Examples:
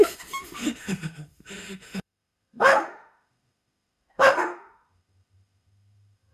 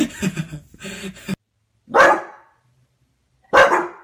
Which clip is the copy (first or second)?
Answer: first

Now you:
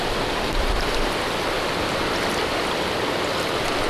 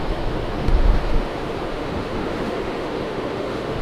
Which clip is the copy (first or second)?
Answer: second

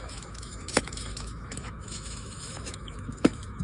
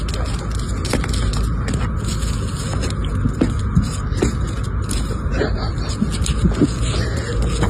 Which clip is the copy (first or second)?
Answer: first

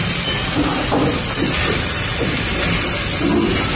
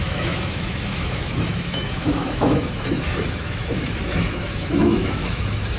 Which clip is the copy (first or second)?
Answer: second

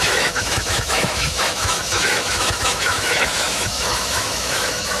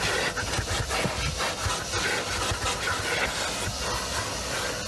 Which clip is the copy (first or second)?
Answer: first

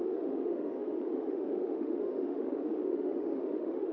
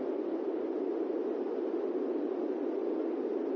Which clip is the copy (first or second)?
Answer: first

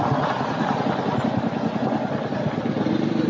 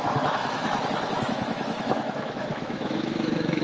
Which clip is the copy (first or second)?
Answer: second